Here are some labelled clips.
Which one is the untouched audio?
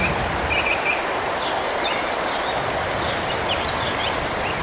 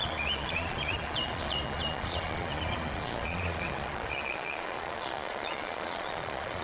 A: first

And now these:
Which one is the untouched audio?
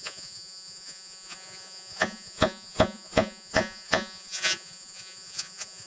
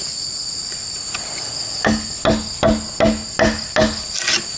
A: second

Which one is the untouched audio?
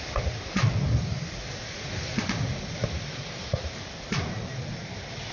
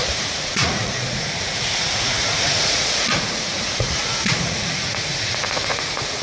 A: first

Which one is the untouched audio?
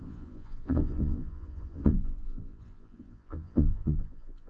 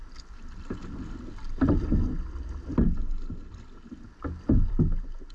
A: second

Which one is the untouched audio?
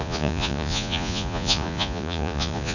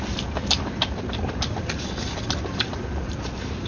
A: second